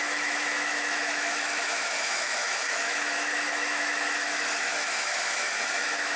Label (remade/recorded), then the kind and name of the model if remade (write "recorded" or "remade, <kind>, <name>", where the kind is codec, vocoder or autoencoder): remade, autoencoder, DAC-VAE